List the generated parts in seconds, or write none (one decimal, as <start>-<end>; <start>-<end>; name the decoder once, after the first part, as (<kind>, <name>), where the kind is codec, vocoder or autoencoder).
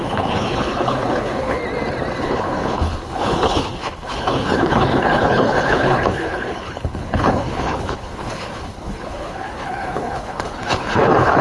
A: 0.0-1.6 (codec, HILCodec); 2.2-11.4